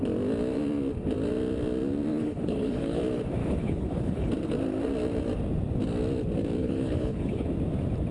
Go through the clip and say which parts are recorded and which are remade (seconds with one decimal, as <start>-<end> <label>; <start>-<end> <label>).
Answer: 0.0-2.1 recorded; 2.1-3.0 remade; 3.0-3.4 recorded; 3.4-4.3 remade; 4.3-6.6 recorded; 6.6-7.5 remade; 7.5-8.1 recorded